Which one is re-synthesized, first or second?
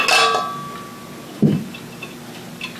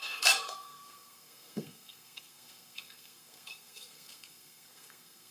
second